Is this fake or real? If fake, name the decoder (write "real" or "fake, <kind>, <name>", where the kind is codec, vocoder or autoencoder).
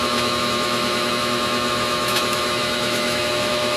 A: fake, autoencoder, DAC-VAE